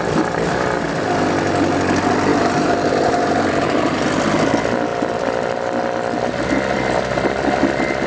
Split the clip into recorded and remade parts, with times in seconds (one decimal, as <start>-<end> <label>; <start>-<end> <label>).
0.0-2.3 recorded; 2.3-4.1 remade; 4.1-8.1 recorded